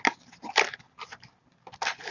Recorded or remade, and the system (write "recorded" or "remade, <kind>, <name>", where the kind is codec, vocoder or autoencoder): recorded